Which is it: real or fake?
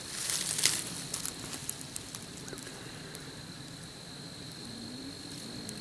real